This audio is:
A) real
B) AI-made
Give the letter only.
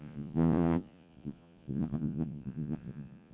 B